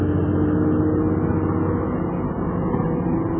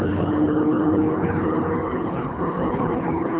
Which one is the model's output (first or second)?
second